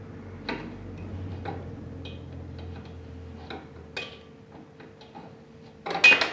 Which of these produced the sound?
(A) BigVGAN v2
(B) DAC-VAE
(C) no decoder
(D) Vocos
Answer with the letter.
C